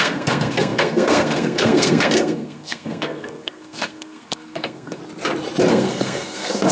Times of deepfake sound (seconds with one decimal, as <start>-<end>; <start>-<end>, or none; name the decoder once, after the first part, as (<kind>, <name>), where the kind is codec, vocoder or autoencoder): 0.0-5.0 (codec, SNAC); 5.7-6.7